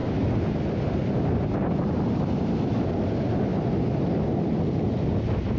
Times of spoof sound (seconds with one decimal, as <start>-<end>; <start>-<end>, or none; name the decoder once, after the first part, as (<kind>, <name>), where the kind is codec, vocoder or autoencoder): none